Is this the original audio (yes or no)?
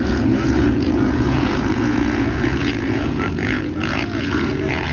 no